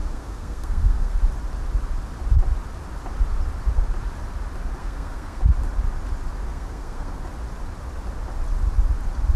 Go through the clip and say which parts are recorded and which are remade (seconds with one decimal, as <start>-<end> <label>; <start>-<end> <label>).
0.0-1.2 remade; 1.2-4.8 recorded; 4.8-5.4 remade; 5.4-6.5 recorded; 6.5-7.2 remade; 7.2-9.4 recorded